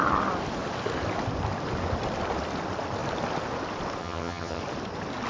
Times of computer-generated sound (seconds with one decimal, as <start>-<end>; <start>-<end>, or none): 4.0-4.6